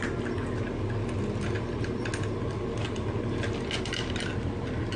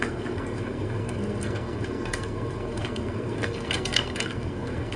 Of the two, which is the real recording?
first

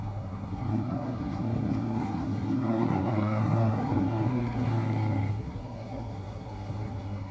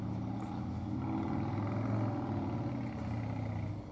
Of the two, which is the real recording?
second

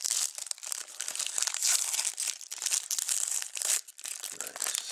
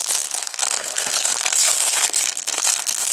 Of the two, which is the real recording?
first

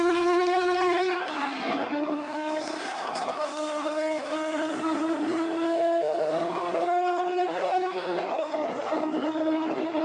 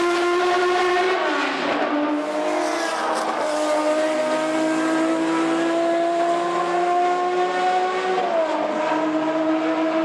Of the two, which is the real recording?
second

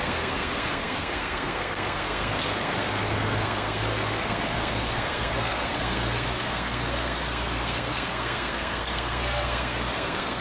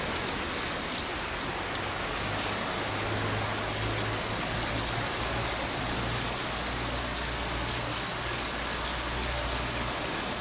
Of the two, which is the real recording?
second